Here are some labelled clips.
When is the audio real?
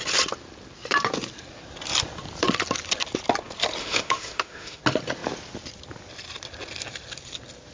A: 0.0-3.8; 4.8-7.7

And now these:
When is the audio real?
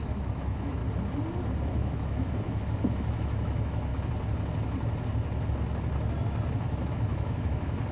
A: 0.8-1.7; 3.9-6.9